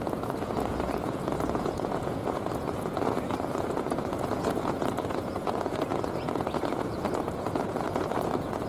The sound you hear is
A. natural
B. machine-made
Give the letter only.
B